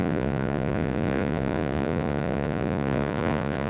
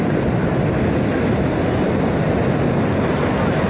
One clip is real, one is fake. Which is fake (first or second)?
first